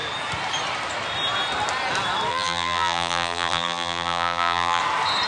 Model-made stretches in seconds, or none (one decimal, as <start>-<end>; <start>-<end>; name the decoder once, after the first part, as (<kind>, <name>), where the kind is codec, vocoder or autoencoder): 2.3-4.8 (vocoder, BigVGAN v2)